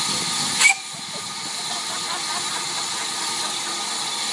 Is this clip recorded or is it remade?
recorded